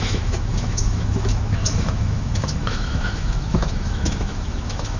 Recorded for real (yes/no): no